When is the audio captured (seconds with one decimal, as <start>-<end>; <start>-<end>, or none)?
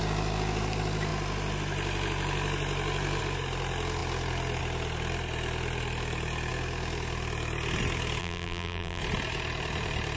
0.0-8.2; 9.0-10.2